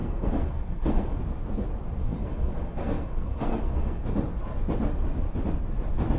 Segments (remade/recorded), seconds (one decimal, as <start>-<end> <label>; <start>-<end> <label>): 0.0-1.2 remade; 1.2-2.0 recorded; 2.0-4.0 remade; 4.0-6.2 recorded